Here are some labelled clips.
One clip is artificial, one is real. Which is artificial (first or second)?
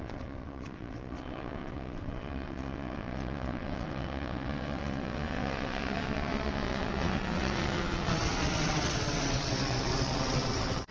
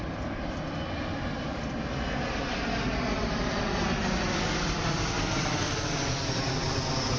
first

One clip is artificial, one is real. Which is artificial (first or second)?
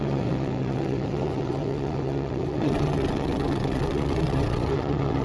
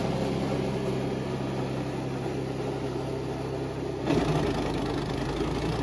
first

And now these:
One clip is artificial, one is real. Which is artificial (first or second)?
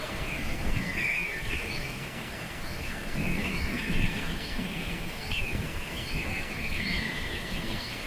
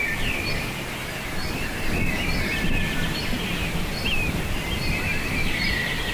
first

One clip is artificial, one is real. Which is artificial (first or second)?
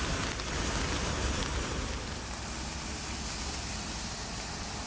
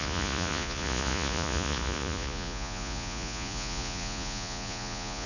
second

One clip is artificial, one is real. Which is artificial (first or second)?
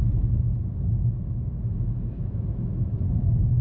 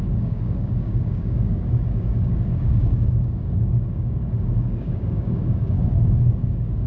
second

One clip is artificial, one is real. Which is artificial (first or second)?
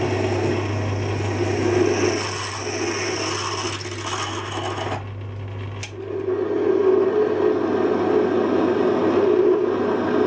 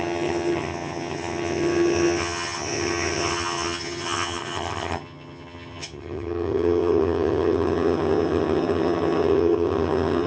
second